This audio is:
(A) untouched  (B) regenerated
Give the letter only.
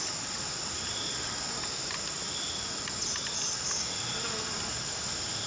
A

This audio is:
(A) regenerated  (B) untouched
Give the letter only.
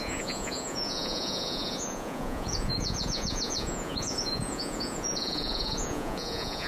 A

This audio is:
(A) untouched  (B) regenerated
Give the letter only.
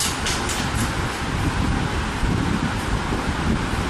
A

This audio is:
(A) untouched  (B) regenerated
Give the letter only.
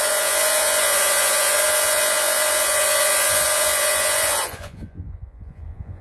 B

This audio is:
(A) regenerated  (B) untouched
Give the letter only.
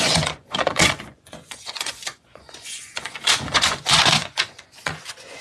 A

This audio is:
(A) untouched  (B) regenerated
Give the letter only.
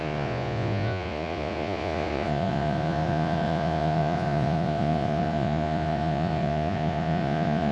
B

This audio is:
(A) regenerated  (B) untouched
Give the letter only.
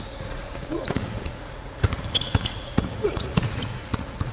A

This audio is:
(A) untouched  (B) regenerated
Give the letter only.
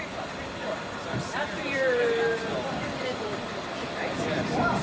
A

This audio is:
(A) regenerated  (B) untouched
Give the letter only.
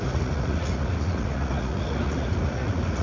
A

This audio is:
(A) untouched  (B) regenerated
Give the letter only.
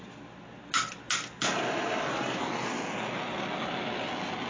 A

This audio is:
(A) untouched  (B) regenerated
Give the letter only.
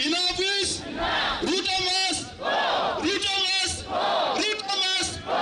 A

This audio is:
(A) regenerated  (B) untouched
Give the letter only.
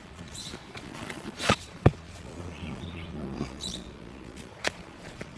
A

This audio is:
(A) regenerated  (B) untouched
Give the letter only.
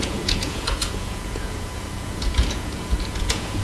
A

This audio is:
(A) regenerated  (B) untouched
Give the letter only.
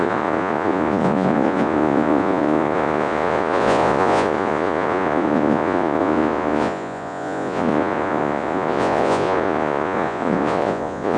A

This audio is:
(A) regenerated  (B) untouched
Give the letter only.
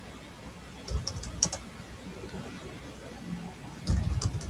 B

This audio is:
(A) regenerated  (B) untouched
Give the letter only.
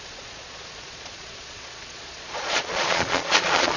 A